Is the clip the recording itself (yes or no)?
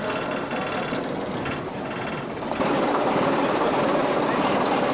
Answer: yes